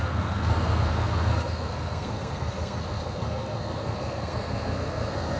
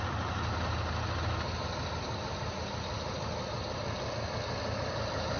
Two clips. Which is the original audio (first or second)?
second